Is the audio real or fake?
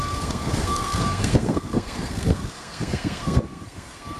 fake